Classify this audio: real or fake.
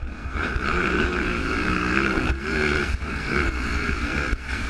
fake